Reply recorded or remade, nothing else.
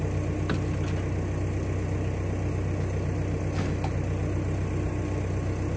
recorded